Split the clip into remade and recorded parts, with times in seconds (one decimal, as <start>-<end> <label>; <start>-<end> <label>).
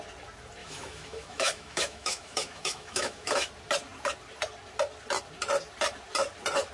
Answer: 0.0-0.6 recorded; 0.6-3.5 remade; 3.5-6.7 recorded